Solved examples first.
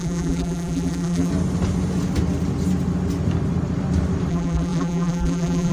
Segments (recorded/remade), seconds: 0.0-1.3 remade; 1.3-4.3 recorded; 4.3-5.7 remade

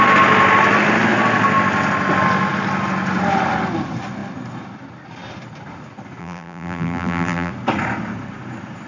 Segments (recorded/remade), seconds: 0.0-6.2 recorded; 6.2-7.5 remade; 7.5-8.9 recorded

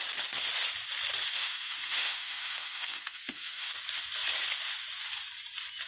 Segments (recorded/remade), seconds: 0.0-1.3 recorded; 1.3-3.7 remade; 3.7-5.9 recorded